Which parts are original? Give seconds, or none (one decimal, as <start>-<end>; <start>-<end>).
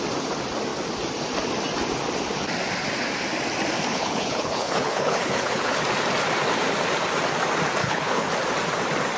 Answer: 0.0-3.9; 5.8-7.8; 8.3-9.2